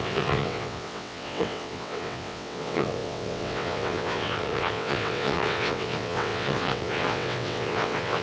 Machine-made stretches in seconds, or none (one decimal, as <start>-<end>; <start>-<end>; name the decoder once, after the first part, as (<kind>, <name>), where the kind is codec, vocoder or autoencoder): 0.0-8.2 (vocoder, WaveNeXt)